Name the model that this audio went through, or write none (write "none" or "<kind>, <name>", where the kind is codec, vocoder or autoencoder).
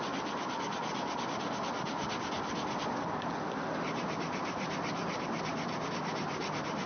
none